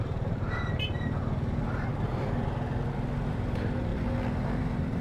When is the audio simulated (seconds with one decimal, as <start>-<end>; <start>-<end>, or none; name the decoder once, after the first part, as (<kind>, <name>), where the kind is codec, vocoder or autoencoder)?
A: 0.0-1.9 (vocoder, BigVGAN v2); 3.3-3.9; 4.4-5.0